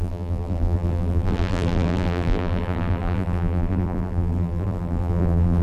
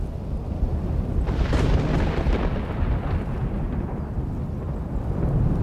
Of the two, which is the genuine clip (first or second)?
second